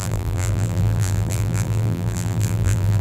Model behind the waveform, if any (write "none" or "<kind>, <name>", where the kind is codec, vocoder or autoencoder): vocoder, BigVGAN v2